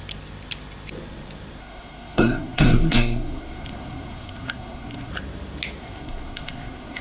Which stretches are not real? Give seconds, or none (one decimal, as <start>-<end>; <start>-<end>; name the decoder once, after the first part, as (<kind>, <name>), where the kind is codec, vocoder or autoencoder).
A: 1.6-5.1 (codec, SNAC); 5.8-7.0